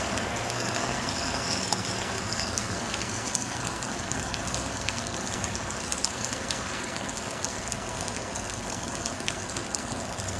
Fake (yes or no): yes